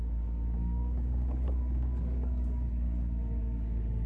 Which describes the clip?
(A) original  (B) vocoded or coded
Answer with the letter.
B